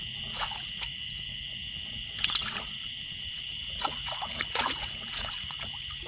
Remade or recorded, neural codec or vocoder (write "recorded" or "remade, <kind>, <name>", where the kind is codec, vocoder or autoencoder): remade, vocoder, Vocos